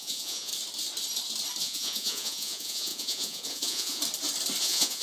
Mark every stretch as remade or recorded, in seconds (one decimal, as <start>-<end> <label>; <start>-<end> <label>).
0.0-0.5 remade; 0.5-1.6 recorded; 1.6-4.0 remade; 4.0-4.6 recorded; 4.6-5.0 remade